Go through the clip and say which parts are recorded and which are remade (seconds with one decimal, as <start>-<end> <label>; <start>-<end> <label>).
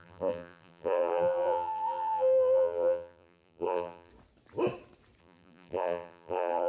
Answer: 0.0-4.1 remade; 4.1-5.2 recorded; 5.2-6.7 remade